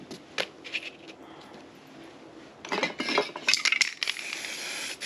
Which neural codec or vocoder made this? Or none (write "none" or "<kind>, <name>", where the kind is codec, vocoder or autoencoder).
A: none